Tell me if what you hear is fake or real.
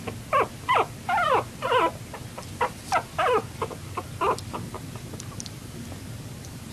fake